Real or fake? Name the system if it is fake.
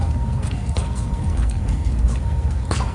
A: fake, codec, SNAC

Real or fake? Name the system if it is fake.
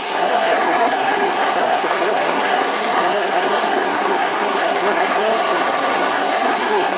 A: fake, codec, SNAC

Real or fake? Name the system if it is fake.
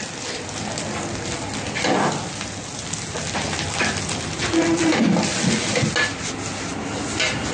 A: real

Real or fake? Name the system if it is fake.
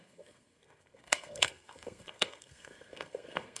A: fake, codec, SNAC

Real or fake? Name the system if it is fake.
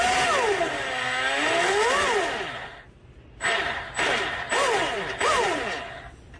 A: real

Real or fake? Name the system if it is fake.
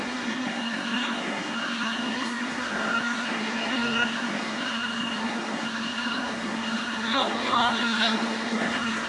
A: fake, codec, SNAC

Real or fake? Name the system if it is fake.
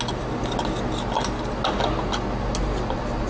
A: real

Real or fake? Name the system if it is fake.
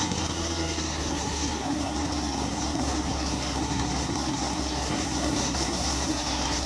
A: fake, codec, SNAC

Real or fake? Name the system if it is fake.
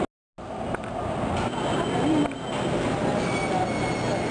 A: real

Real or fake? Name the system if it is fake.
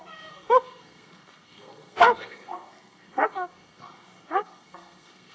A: fake, codec, SNAC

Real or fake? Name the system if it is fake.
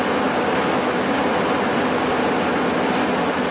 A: real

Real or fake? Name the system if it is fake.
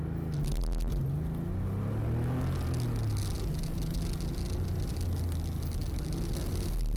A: real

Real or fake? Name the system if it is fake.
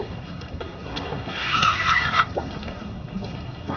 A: fake, codec, SNAC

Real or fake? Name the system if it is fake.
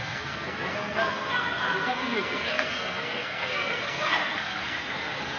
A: fake, codec, SNAC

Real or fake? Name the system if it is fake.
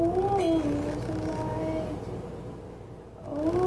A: real